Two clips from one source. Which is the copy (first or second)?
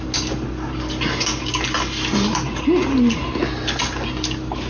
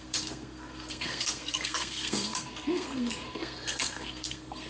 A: second